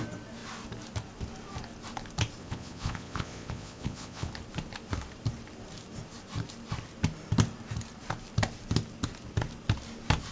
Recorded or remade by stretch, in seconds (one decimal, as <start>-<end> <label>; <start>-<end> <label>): 0.0-2.4 recorded; 2.4-4.3 remade; 4.3-10.3 recorded